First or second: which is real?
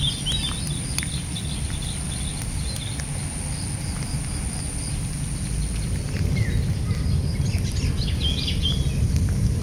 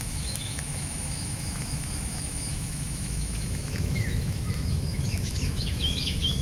first